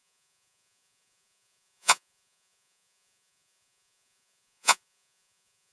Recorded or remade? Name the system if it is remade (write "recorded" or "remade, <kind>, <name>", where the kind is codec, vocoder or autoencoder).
remade, vocoder, Vocos